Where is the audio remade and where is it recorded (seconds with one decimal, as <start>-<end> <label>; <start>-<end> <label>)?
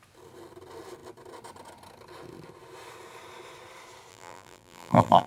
0.0-4.1 recorded; 4.1-5.3 remade